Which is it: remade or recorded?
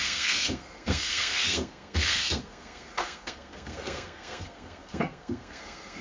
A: remade